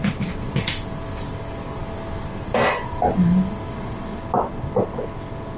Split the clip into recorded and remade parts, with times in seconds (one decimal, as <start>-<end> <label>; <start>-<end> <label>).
0.0-3.7 recorded; 3.7-4.2 remade; 4.2-5.6 recorded